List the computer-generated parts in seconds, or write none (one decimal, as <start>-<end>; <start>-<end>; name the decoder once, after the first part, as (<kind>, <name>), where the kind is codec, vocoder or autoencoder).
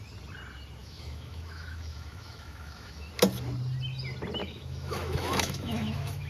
0.8-3.1 (autoencoder, DAC-VAE); 4.4-6.3